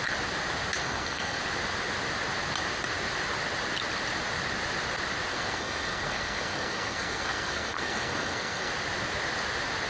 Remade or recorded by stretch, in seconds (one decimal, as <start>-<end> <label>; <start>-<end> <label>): 0.0-0.8 recorded; 0.8-1.4 remade; 1.4-5.3 recorded; 5.3-8.7 remade; 8.7-9.9 recorded